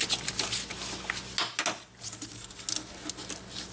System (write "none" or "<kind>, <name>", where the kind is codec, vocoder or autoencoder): none